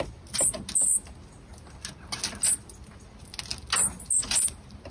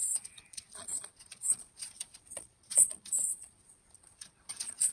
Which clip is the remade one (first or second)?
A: second